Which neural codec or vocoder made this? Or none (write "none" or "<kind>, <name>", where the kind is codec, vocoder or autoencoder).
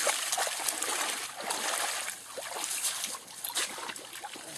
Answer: none